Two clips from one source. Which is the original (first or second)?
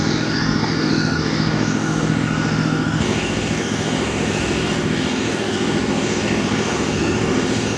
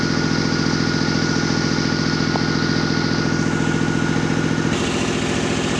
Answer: second